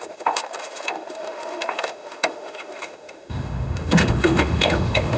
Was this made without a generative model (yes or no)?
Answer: no